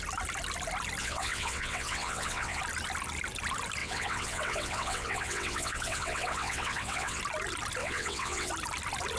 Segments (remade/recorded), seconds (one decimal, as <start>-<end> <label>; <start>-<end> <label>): 0.0-1.0 recorded; 1.0-2.6 remade; 2.6-3.8 recorded; 3.8-7.2 remade; 7.2-7.8 recorded; 7.8-8.5 remade; 8.5-9.2 recorded